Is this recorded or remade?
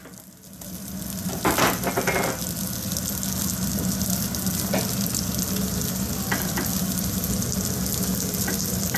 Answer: recorded